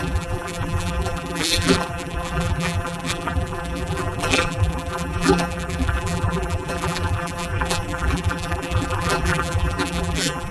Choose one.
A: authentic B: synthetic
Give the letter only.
B